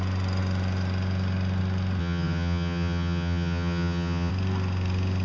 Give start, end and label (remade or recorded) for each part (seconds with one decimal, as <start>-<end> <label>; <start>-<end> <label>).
0.0-2.0 recorded; 2.0-4.3 remade; 4.3-5.2 recorded